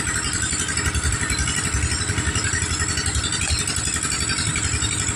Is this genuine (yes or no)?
no